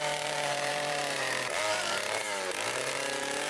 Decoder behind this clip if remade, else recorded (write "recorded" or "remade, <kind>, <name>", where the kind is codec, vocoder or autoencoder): remade, vocoder, BigVGAN v2